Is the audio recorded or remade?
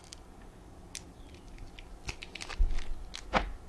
recorded